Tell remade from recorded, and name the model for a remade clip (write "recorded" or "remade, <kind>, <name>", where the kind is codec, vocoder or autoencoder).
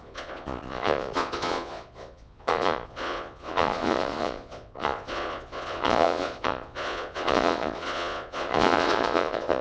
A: remade, vocoder, Vocos